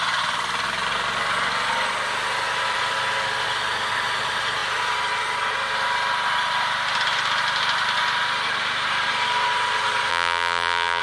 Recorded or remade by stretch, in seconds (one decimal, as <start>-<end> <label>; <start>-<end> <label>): 0.0-10.1 recorded; 10.1-11.0 remade